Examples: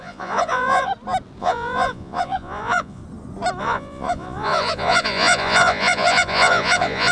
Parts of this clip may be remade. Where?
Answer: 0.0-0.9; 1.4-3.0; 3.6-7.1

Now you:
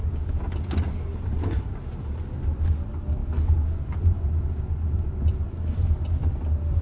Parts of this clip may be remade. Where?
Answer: 1.1-1.8

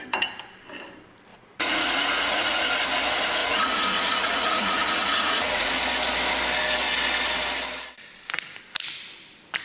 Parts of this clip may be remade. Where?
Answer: 1.3-2.6; 3.4-5.7

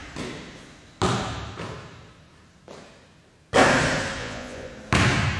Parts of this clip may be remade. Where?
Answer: 4.2-4.7

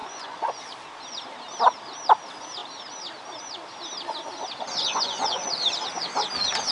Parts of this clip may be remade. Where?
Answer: 0.0-0.6; 4.9-5.5

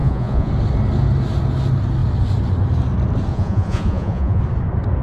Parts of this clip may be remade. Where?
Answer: 0.0-0.5; 3.3-4.4